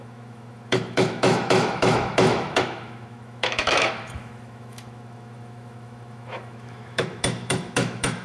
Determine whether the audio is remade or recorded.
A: remade